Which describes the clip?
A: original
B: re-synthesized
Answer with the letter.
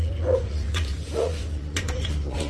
B